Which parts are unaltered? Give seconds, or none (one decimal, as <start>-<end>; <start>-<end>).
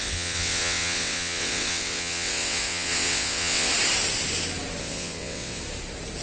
3.7-4.8; 5.6-6.2